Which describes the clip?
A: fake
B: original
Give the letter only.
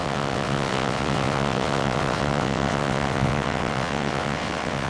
A